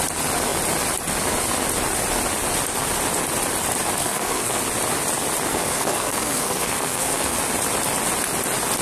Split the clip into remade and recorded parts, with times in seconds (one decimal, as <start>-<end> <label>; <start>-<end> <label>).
0.0-4.0 recorded; 4.0-4.6 remade; 4.6-5.5 recorded; 5.5-7.4 remade; 7.4-8.8 recorded